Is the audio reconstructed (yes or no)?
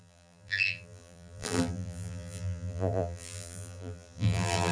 yes